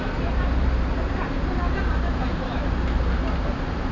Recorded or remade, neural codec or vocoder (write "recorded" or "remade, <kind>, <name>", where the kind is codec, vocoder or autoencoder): remade, vocoder, BigVGAN v2